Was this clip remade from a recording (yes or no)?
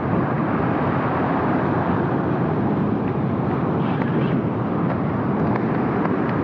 no